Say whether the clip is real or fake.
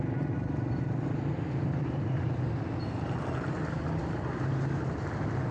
real